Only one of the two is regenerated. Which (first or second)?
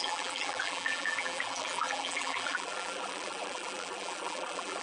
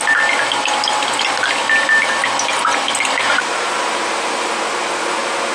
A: first